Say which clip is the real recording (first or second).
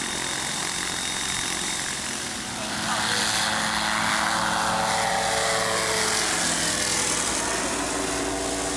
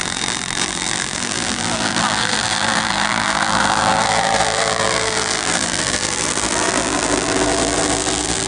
first